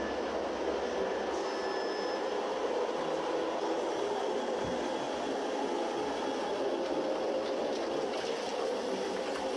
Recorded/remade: recorded